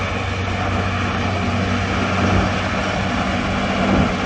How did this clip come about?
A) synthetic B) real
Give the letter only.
B